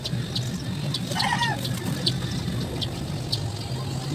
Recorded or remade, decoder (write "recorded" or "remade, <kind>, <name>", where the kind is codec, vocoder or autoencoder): recorded